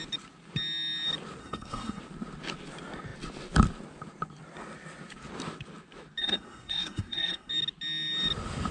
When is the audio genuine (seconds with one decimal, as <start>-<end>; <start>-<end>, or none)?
0.0-1.4; 2.0-6.2; 7.5-8.7

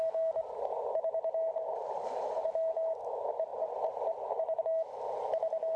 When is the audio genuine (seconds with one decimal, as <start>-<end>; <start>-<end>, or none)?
0.0-3.5; 4.6-5.8

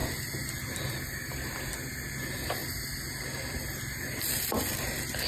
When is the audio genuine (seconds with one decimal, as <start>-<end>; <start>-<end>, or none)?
0.0-5.3

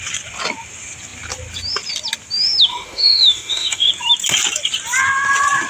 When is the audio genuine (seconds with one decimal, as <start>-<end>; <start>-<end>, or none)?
0.0-2.7; 3.9-5.7

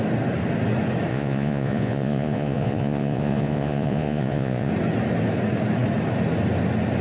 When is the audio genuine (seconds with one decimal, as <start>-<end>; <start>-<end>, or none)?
0.0-1.1; 4.7-7.0

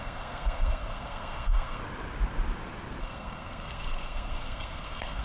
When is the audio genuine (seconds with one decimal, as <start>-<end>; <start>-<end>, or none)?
1.8-3.0

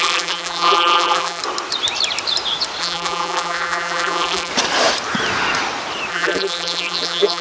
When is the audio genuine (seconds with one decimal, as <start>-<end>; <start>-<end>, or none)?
1.4-2.8; 4.5-6.1